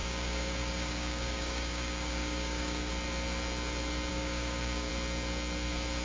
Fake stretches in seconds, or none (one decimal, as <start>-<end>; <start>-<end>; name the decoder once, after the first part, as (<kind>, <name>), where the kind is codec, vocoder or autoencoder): 0.0-2.9 (codec, DAC); 4.1-4.9